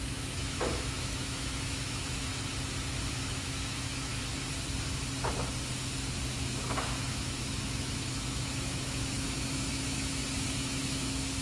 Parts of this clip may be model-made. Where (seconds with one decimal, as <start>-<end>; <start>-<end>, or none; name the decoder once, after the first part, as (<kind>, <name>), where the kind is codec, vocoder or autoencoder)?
0.0-2.3 (autoencoder, DAC-VAE); 3.1-4.1; 6.3-11.4